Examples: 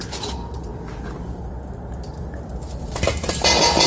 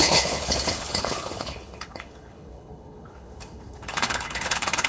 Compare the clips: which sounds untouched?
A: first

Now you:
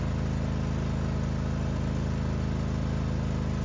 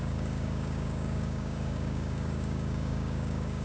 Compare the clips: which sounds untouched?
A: first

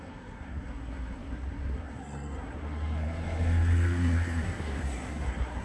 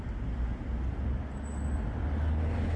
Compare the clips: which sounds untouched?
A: second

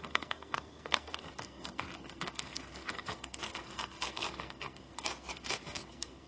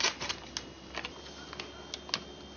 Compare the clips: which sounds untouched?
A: second